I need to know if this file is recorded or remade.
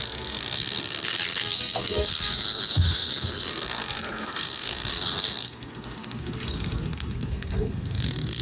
remade